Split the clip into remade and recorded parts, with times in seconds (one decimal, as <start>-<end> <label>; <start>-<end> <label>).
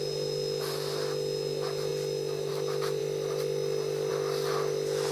0.0-5.1 recorded